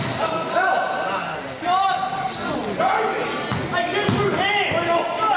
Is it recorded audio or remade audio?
recorded